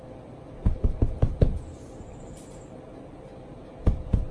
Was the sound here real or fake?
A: real